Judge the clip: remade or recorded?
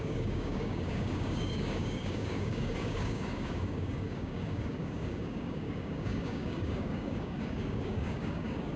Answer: remade